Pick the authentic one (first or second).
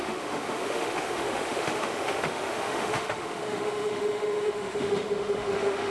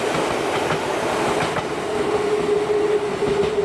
second